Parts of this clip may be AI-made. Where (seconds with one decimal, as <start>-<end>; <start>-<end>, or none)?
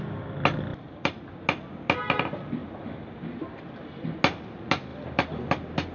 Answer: 0.7-1.3; 2.6-3.4; 4.9-5.5